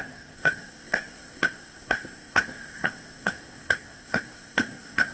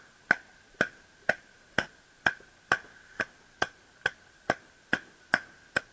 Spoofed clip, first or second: first